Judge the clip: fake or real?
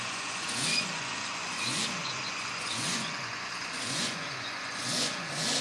fake